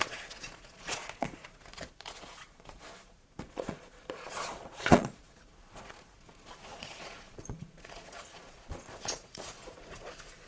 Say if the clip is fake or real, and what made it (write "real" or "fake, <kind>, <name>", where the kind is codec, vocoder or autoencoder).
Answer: fake, vocoder, Vocos